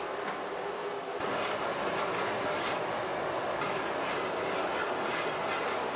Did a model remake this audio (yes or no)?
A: no